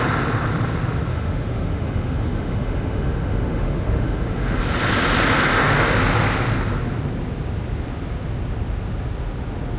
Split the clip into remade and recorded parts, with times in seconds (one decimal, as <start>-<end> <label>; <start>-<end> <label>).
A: 0.0-1.1 recorded; 1.1-4.6 remade; 4.6-5.5 recorded; 5.5-6.0 remade; 6.0-9.8 recorded